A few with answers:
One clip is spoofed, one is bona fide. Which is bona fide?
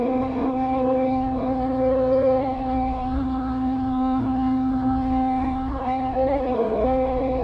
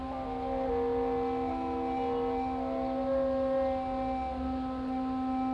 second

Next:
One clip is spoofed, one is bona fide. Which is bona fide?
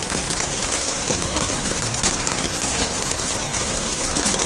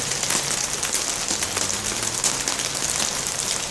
second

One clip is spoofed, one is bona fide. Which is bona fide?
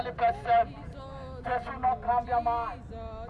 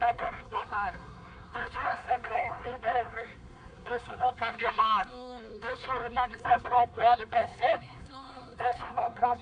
first